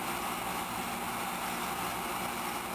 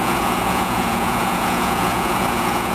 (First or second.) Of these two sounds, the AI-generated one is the second